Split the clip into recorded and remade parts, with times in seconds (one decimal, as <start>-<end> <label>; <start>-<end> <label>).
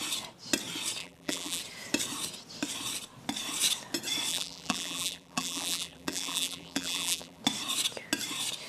0.0-1.0 recorded; 1.0-1.6 remade; 1.6-4.3 recorded; 4.3-7.4 remade; 7.4-8.7 recorded